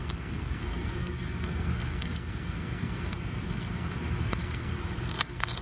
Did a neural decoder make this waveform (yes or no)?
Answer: yes